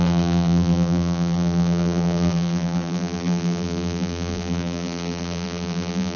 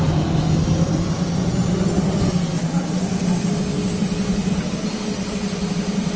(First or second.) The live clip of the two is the second